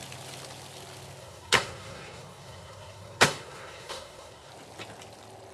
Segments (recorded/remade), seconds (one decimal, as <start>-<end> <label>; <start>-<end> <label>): 0.0-1.2 recorded; 1.2-4.5 remade; 4.5-5.5 recorded